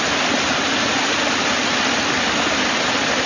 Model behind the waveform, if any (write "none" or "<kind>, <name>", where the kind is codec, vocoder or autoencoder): none